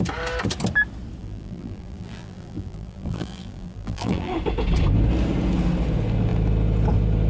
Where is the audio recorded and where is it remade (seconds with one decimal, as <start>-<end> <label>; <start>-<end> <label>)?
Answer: 0.0-1.2 recorded; 1.2-4.3 remade; 4.3-7.3 recorded